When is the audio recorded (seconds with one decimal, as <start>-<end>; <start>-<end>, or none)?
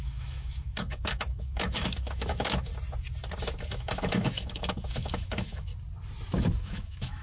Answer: 2.7-3.6; 5.7-6.6